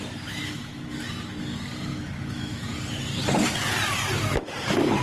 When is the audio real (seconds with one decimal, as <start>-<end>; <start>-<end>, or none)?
0.0-0.4; 1.0-1.9; 2.7-5.0